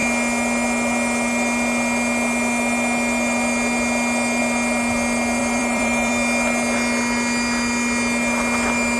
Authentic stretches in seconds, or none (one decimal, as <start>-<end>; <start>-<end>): 0.0-5.4; 6.1-9.0